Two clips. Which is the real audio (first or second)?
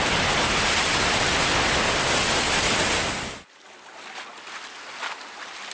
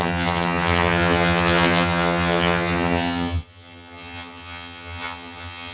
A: first